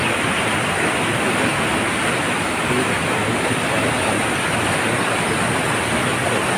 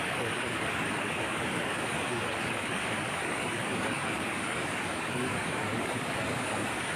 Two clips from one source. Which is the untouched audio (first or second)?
first